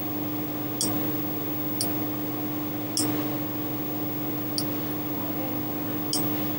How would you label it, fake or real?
real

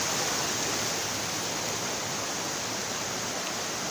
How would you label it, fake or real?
real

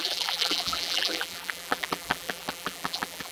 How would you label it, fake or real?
fake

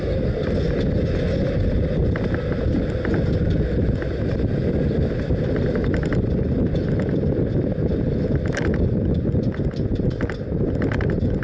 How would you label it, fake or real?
real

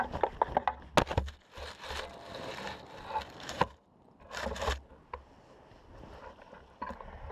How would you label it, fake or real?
real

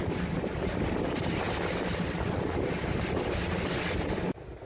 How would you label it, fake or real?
real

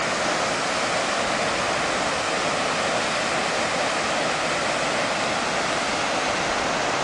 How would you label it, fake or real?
real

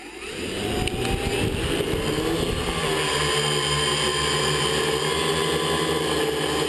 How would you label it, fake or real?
real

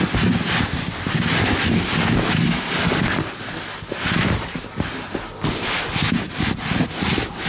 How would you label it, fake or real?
real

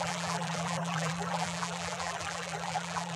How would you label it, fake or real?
fake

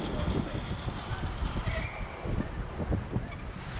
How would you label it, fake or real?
real